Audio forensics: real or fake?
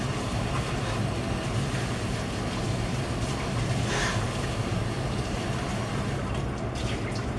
real